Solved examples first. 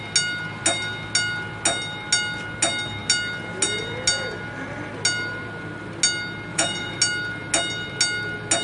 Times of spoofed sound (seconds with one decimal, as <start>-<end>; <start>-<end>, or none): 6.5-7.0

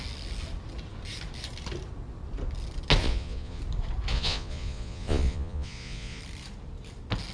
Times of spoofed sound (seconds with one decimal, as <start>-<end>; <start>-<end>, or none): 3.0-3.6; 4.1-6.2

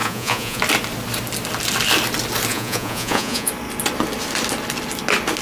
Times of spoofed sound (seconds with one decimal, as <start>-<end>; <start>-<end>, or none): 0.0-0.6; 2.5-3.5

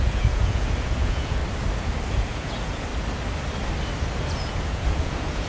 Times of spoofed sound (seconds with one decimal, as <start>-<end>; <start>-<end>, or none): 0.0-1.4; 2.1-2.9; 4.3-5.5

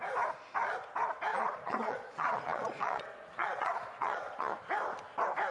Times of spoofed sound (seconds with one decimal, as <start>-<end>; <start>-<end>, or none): 1.3-4.6

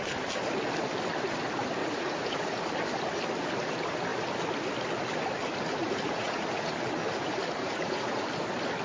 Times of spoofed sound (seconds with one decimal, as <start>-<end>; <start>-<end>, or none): 1.8-2.6; 5.8-6.7; 7.6-8.2

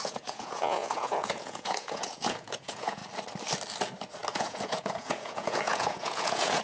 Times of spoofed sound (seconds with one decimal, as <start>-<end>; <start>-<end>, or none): 0.0-3.0; 4.3-6.6

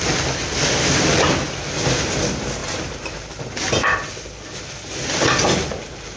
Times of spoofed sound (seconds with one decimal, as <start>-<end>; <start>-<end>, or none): none